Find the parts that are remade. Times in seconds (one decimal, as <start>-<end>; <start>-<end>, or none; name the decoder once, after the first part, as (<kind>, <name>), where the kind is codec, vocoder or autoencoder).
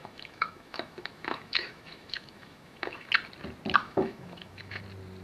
0.0-3.1 (autoencoder, DAC-VAE); 3.8-4.8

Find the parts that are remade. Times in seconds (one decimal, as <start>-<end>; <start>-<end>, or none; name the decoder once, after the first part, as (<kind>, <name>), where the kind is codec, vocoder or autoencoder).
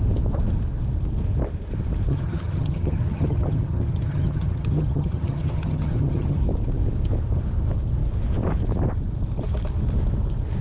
2.1-6.4 (vocoder, HiFi-GAN)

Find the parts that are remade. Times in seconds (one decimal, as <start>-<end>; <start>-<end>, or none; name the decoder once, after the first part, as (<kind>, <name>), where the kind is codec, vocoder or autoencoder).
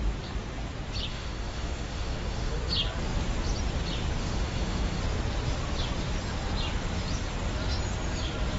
1.1-2.6 (autoencoder, DAC-VAE); 4.2-5.0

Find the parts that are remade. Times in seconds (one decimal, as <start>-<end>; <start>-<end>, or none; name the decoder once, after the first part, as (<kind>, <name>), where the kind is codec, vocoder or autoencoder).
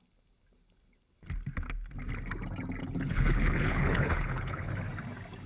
2.8-4.7 (codec, HILCodec)